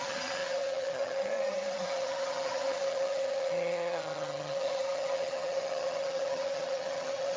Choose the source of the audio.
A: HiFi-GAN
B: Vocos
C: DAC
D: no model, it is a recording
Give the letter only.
A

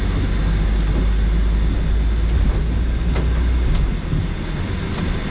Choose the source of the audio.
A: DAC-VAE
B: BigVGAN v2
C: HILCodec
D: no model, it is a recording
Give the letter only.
D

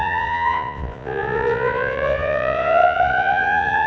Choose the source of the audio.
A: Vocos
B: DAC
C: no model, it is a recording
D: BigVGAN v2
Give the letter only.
A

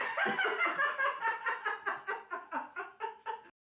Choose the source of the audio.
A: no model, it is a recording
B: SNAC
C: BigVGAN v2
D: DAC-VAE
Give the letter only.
A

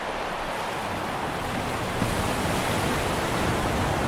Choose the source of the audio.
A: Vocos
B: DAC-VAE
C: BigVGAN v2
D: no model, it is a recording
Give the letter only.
D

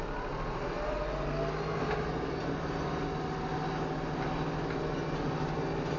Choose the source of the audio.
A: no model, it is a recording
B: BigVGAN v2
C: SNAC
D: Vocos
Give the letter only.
A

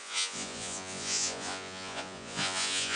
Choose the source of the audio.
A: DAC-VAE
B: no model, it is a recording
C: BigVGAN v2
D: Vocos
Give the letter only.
D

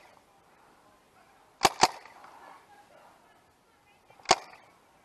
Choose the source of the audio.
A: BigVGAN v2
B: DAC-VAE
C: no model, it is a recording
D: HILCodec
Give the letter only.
C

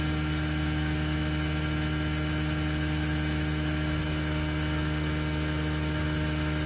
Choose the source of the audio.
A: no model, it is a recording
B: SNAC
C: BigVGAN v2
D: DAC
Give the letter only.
A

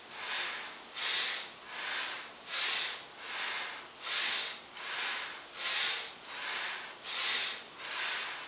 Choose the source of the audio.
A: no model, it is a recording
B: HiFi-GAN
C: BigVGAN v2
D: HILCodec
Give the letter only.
A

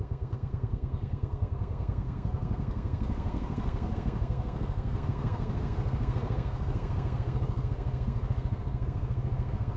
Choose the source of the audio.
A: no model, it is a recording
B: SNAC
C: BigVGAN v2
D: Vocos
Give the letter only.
B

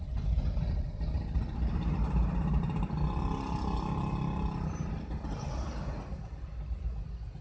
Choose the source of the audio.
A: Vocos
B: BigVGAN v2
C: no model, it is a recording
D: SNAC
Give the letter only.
C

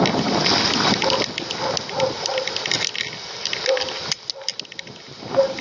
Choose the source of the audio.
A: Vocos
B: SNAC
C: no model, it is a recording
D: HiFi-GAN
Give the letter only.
C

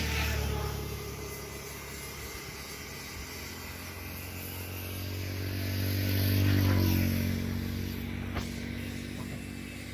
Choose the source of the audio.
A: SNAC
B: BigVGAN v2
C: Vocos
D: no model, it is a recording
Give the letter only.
D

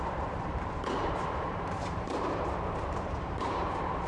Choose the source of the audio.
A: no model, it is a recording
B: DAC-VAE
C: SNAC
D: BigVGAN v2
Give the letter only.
D